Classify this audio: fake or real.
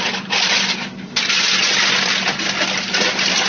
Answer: real